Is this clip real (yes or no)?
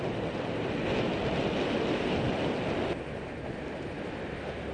yes